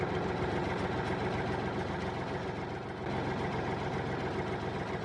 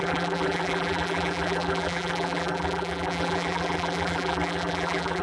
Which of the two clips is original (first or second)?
first